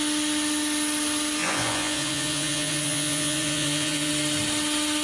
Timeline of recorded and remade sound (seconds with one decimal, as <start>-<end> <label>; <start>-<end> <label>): 0.0-1.4 recorded; 1.4-4.1 remade; 4.1-5.0 recorded